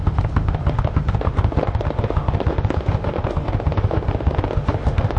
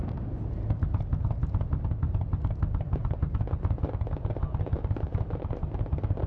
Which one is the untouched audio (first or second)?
second